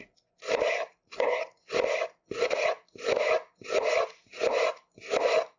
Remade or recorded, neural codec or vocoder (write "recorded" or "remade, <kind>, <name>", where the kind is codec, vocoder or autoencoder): recorded